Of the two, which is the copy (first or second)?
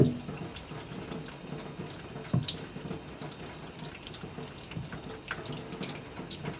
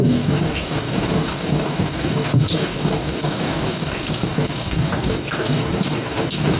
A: second